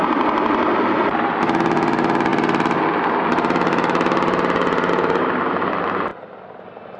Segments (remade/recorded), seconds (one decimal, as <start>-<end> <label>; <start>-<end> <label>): 0.0-7.0 recorded